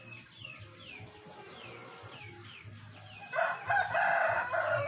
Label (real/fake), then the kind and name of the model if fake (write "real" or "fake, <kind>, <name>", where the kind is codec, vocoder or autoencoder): real